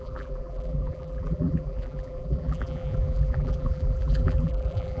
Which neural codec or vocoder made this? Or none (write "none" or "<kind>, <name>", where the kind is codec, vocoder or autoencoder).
vocoder, BigVGAN v2